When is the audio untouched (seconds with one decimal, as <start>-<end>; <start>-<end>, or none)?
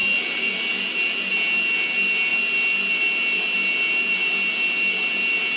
0.5-5.6